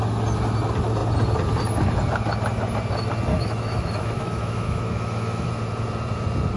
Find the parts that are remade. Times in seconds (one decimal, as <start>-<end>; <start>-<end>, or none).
3.3-5.5